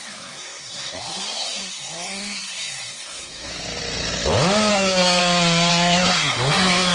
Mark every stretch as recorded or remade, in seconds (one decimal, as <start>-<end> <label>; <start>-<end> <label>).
0.0-3.5 remade; 3.5-4.7 recorded; 4.7-5.2 remade; 5.2-5.7 recorded; 5.7-6.9 remade

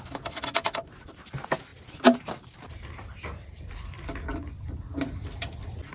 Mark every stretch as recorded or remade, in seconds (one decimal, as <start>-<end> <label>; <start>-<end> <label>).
0.0-5.9 recorded

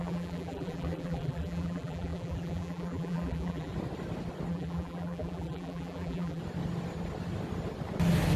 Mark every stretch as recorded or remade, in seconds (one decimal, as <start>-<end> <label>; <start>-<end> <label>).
0.0-3.7 remade; 3.7-4.5 recorded; 4.5-6.4 remade; 6.4-8.4 recorded

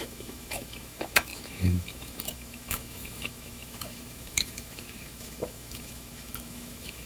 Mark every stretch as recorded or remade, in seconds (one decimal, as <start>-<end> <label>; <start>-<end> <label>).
0.0-7.1 remade